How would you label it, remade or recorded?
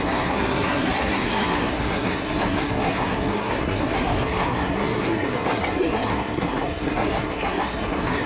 remade